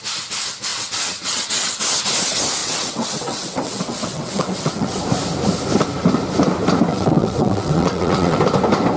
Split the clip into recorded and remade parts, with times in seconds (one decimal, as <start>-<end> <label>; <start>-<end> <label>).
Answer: 0.0-0.7 recorded; 0.7-1.8 remade; 1.8-2.6 recorded; 2.6-5.0 remade; 5.0-6.9 recorded; 6.9-8.4 remade; 8.4-9.0 recorded